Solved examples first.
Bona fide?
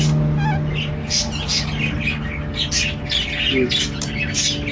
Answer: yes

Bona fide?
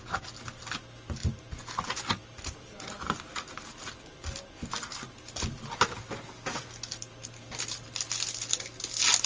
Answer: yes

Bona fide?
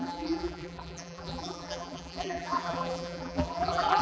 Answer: no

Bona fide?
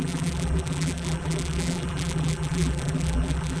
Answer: no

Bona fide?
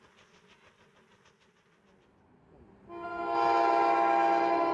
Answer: yes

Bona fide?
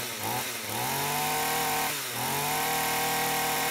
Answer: yes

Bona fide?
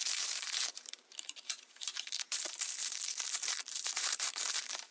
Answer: no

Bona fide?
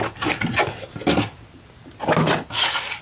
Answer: yes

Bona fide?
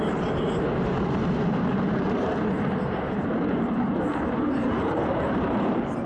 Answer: no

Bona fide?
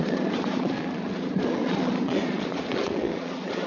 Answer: no